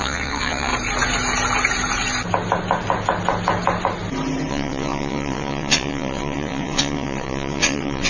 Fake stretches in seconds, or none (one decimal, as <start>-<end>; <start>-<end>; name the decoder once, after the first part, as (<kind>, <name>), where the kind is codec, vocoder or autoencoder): 0.0-0.7 (vocoder, WaveNeXt); 4.5-8.1